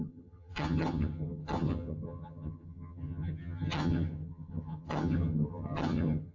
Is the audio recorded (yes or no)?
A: no